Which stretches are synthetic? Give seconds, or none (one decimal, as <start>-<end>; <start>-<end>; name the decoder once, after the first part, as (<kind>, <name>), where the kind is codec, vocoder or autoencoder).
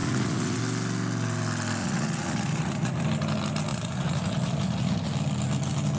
0.0-0.6 (vocoder, Vocos); 1.8-3.0; 3.7-5.1